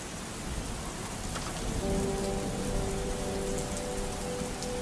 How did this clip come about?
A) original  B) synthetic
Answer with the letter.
A